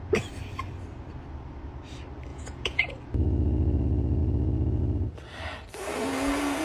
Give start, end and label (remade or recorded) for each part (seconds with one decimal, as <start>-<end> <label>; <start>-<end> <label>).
0.0-2.3 recorded; 2.3-2.9 remade; 2.9-6.6 recorded